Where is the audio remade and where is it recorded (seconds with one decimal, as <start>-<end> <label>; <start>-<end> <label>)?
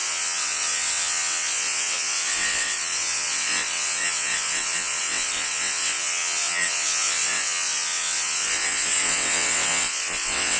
0.0-10.6 remade